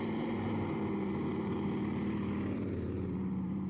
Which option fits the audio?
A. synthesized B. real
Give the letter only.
A